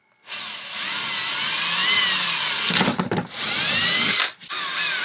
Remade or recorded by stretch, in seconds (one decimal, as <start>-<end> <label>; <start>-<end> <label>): 0.0-1.8 recorded; 1.8-5.0 remade